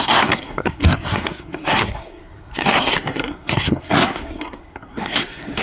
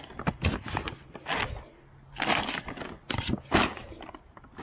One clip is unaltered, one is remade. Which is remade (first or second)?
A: first